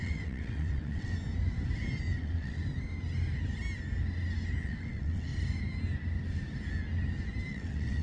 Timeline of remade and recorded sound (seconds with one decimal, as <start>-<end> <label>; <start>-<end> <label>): 0.0-1.1 remade; 1.1-2.2 recorded; 2.2-2.6 remade; 2.6-4.6 recorded; 4.6-5.3 remade; 5.3-7.5 recorded; 7.5-8.0 remade